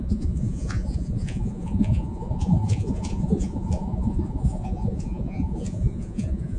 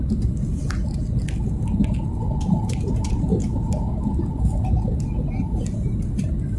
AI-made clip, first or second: first